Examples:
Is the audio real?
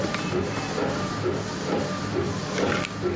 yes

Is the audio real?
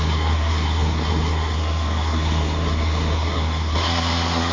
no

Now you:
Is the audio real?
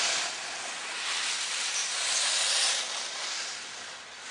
yes